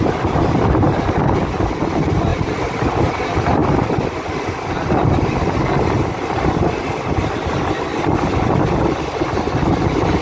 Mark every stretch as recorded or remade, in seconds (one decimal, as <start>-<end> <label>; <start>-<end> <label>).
0.0-10.2 recorded